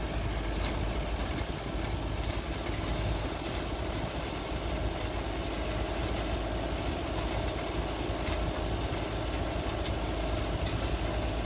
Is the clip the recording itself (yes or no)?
yes